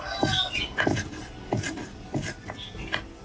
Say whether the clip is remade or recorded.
recorded